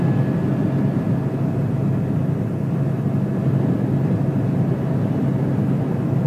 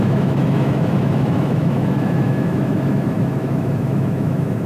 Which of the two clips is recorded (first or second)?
first